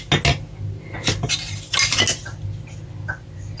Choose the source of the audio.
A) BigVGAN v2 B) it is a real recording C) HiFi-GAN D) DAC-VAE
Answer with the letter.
B